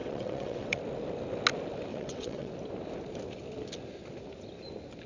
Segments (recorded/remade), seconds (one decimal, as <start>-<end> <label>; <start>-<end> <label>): 0.0-0.8 remade; 0.8-1.9 recorded; 1.9-2.5 remade; 2.5-5.1 recorded